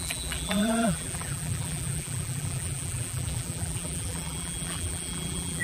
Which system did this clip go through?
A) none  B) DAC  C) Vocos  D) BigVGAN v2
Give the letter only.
D